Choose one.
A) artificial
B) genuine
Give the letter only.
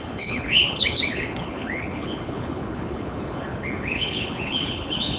A